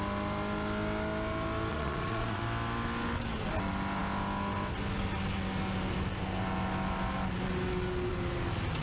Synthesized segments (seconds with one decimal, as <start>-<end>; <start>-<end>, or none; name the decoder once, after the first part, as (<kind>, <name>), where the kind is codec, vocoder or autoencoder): 1.7-2.4 (vocoder, Vocos)